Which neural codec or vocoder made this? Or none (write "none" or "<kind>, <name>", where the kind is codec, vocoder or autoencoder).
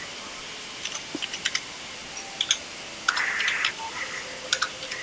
none